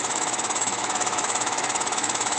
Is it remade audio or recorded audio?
remade